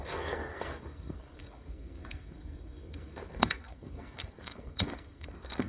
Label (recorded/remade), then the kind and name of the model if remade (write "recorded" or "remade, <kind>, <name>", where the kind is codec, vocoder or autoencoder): remade, codec, SNAC